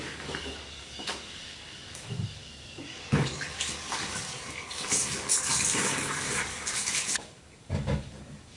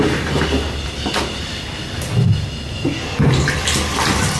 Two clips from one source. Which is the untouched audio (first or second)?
second